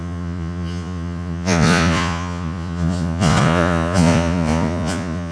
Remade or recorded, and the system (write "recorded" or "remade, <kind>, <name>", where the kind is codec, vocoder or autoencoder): remade, vocoder, Vocos